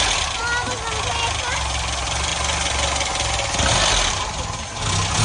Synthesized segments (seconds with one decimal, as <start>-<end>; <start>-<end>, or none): none